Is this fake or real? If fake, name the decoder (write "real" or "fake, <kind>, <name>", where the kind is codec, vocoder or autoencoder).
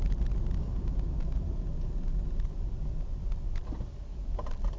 real